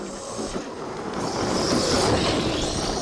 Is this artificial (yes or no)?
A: no